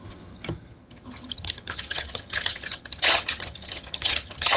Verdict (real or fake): fake